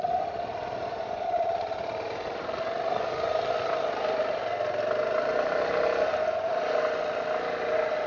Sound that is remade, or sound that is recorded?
recorded